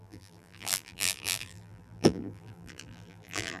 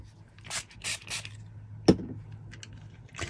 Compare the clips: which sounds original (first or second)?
second